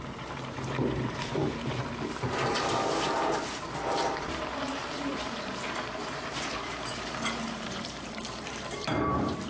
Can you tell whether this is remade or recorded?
remade